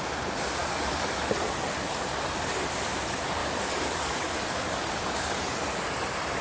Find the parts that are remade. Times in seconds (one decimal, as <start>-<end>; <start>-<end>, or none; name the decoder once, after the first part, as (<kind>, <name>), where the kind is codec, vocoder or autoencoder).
0.6-1.3 (codec, DAC); 3.4-5.4